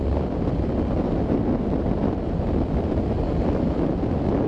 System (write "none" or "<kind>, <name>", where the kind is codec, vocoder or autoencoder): none